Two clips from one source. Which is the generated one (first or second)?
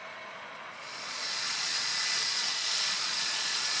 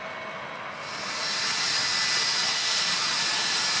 first